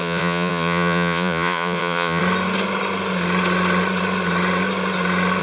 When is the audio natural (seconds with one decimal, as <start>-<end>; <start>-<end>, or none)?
2.2-5.4

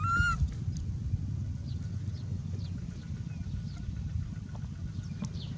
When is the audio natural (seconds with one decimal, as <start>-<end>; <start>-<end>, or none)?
0.0-2.3; 3.0-5.6

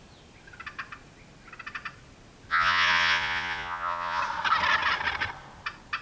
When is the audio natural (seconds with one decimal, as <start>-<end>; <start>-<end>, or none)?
0.0-2.5; 4.2-6.0